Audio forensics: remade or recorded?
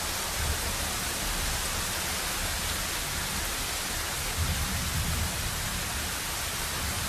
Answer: recorded